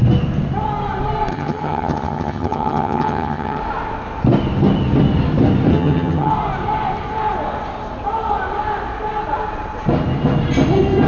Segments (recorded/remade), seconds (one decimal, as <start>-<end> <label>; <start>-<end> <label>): 0.0-1.3 recorded; 1.3-3.6 remade; 3.6-5.7 recorded; 5.7-6.3 remade; 6.3-11.1 recorded